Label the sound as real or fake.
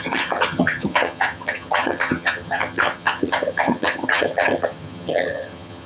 fake